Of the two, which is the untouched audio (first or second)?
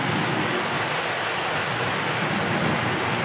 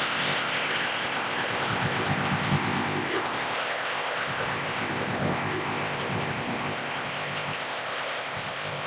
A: first